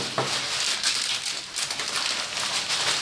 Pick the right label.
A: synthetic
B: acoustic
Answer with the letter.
B